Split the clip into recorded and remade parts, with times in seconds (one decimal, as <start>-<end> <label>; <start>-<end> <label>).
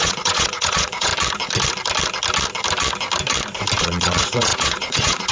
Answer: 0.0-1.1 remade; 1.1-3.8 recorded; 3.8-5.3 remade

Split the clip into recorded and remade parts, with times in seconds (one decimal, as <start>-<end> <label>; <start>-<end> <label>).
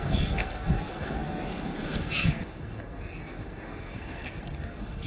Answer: 0.0-5.1 remade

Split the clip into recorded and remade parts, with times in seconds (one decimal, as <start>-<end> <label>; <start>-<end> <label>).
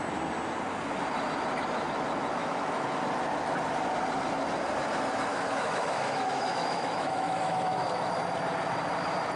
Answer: 0.0-2.4 recorded; 2.4-3.0 remade; 3.0-5.3 recorded; 5.3-7.9 remade; 7.9-9.4 recorded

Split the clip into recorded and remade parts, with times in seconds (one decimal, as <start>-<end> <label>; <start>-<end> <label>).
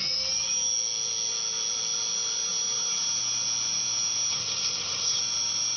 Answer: 0.0-4.3 recorded; 4.3-5.2 remade; 5.2-5.8 recorded